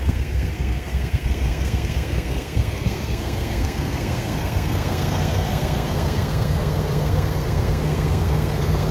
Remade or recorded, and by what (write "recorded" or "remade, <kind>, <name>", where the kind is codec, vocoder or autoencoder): remade, codec, SNAC